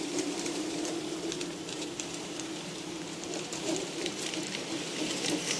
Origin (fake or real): fake